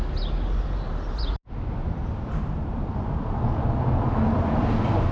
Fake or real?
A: real